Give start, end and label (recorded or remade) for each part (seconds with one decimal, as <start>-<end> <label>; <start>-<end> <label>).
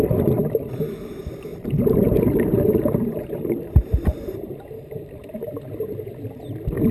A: 0.0-1.5 recorded; 1.5-5.6 remade; 5.6-6.9 recorded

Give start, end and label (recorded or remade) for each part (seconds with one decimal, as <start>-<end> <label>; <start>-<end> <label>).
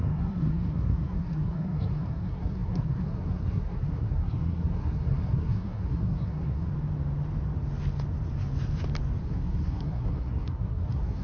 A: 0.0-6.7 remade; 6.7-9.2 recorded; 9.2-11.2 remade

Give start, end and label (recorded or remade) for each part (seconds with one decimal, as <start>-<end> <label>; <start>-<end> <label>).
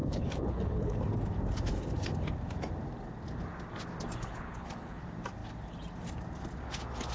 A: 0.0-1.0 remade; 1.0-4.2 recorded; 4.2-5.0 remade; 5.0-7.1 recorded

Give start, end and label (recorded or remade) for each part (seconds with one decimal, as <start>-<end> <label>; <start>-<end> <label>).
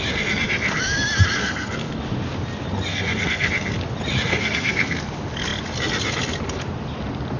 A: 0.0-1.4 recorded; 1.4-2.0 remade; 2.0-2.9 recorded; 2.9-3.5 remade; 3.5-4.3 recorded; 4.3-5.0 remade; 5.0-7.4 recorded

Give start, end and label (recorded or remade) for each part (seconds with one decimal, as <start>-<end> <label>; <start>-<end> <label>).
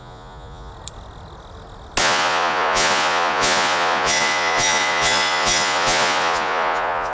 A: 0.0-0.7 remade; 0.7-2.0 recorded; 2.0-7.1 remade